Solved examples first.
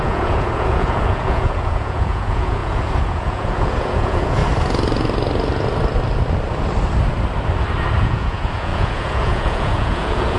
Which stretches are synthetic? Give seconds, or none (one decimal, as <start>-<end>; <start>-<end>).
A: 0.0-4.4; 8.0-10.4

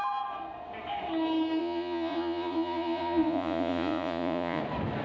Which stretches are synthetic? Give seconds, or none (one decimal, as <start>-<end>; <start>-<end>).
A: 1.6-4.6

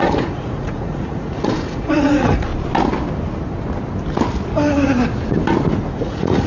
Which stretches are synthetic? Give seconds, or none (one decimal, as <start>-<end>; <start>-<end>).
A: 0.0-2.5; 5.9-6.5

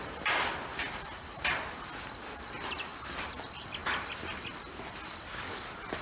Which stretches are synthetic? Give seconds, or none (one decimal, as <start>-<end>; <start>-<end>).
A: none

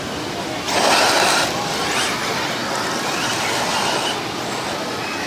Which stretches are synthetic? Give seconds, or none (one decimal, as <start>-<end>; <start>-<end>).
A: none

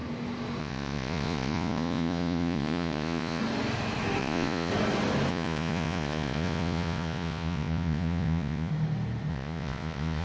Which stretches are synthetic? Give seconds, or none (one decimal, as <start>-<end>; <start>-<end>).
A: 0.6-3.4; 4.2-4.7; 5.3-8.7; 9.3-10.2

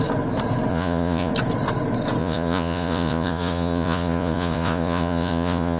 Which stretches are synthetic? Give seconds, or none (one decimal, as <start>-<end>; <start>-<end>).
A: 0.7-1.3; 2.2-5.8